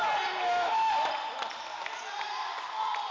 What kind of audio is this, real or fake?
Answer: real